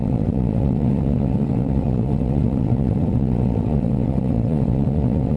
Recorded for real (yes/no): no